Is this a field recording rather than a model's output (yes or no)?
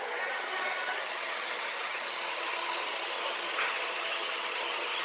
no